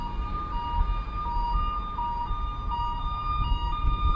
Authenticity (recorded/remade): recorded